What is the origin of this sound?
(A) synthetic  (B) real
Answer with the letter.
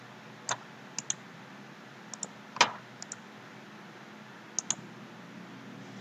B